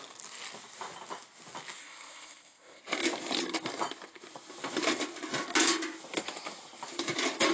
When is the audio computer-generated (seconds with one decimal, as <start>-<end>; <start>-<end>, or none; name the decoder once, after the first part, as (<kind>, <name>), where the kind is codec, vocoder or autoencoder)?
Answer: 1.8-2.8 (codec, ZipCodec)